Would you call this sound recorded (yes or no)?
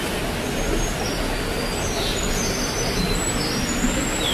yes